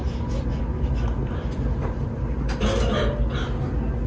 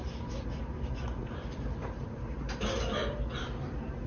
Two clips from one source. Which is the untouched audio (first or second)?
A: first